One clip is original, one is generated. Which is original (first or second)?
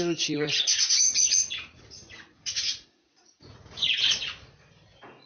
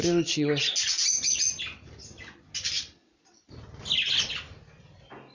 second